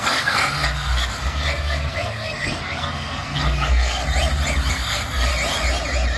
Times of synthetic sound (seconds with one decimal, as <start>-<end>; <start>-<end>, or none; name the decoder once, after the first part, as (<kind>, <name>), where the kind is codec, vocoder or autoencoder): 0.0-4.0 (codec, SNAC); 4.7-5.3